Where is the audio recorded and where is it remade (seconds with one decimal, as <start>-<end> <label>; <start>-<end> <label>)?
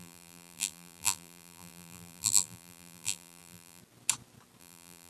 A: 0.0-3.8 remade; 3.8-4.6 recorded; 4.6-5.1 remade